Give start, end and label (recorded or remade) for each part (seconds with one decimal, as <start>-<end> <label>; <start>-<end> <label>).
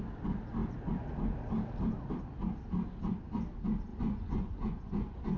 0.0-3.9 recorded; 3.9-5.4 remade